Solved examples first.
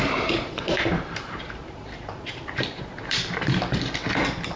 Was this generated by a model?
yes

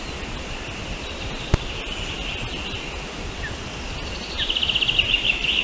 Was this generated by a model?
no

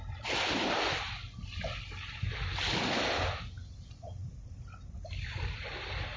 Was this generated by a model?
no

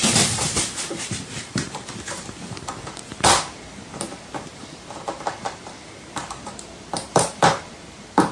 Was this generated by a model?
yes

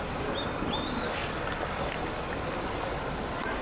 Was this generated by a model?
no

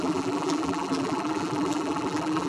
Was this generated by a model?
yes